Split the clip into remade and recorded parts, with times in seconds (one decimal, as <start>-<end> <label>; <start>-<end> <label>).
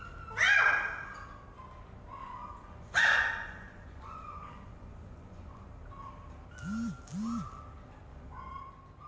0.0-2.2 recorded; 2.2-5.7 remade; 5.7-8.1 recorded; 8.1-8.6 remade; 8.6-9.1 recorded